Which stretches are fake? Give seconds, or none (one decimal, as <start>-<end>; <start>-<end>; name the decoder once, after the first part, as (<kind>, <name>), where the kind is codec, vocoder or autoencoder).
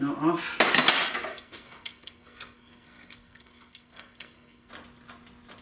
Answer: 1.3-4.7 (codec, SNAC)